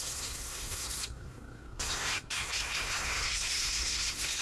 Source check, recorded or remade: remade